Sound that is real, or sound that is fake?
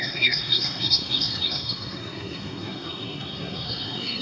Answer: fake